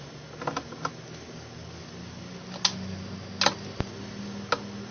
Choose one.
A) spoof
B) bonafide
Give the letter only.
B